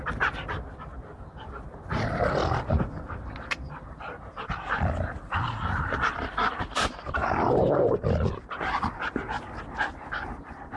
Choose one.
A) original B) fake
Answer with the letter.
A